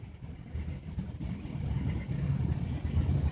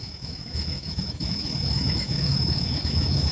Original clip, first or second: first